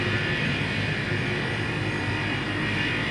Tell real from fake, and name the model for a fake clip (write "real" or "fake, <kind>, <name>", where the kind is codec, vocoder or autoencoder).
fake, vocoder, BigVGAN v2